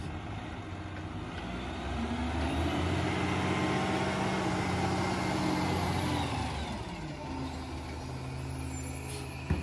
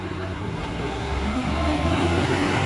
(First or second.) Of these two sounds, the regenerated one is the second